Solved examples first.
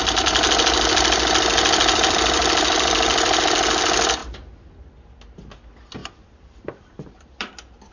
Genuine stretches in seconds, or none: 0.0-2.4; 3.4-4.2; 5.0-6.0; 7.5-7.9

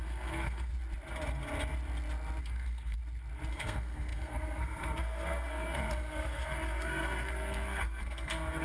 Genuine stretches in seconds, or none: 0.7-2.4; 3.0-3.5

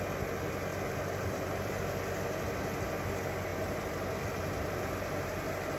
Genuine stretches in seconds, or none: 0.0-0.7; 1.7-3.5; 4.9-5.8

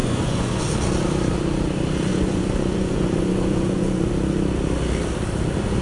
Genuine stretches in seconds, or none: 0.6-2.1; 4.1-5.8